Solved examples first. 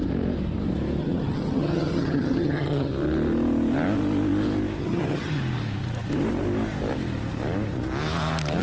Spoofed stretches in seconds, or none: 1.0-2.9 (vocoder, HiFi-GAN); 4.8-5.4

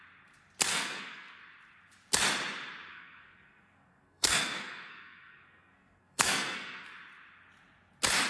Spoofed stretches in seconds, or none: 0.7-1.4 (codec, SNAC); 2.9-6.9

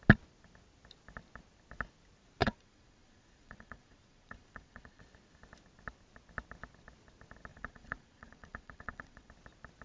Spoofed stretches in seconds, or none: 2.4-5.0 (vocoder, Vocos); 7.5-9.3